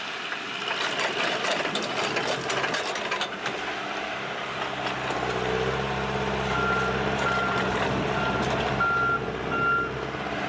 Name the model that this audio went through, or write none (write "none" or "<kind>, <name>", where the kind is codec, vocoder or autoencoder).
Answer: none